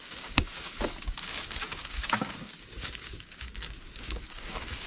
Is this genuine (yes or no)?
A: no